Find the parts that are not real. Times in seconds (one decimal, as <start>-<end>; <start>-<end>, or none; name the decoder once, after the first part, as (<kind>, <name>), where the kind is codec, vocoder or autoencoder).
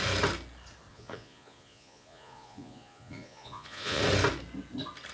0.9-4.0 (vocoder, Vocos)